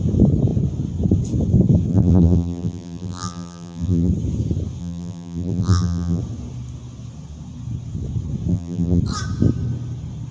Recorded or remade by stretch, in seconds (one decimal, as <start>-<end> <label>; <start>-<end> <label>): 0.0-1.9 recorded; 1.9-4.1 remade; 4.1-4.8 recorded; 4.8-6.2 remade; 6.2-8.5 recorded; 8.5-9.0 remade; 9.0-10.3 recorded

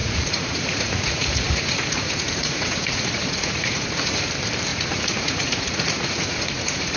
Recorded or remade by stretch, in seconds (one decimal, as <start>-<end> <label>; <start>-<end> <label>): 0.0-4.2 remade; 4.2-4.7 recorded; 4.7-7.0 remade

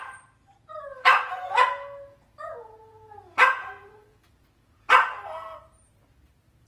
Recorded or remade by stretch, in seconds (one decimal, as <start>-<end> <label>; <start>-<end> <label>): 0.0-0.9 recorded; 0.9-4.9 remade; 4.9-6.7 recorded

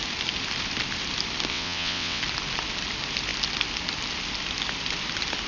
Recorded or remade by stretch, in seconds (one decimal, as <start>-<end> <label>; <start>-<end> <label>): 0.0-1.5 recorded; 1.5-2.2 remade; 2.2-5.5 recorded

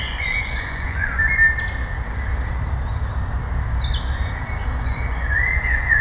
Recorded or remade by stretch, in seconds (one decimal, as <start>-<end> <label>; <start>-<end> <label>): 0.0-1.2 remade; 1.2-4.8 recorded; 4.8-6.0 remade

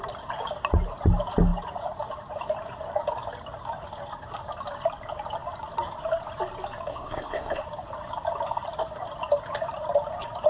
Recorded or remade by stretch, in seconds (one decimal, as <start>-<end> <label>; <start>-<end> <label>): 0.0-6.9 recorded; 6.9-7.6 remade; 7.6-10.5 recorded

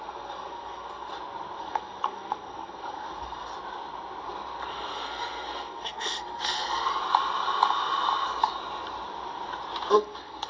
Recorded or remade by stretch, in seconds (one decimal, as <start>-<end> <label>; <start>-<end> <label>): 0.0-1.1 remade; 1.1-1.6 recorded; 1.6-3.5 remade; 3.5-4.7 recorded; 4.7-6.9 remade; 6.9-9.9 recorded; 9.9-10.5 remade